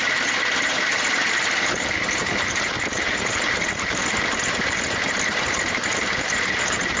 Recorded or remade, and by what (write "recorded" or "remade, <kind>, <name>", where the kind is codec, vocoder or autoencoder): remade, vocoder, BigVGAN v2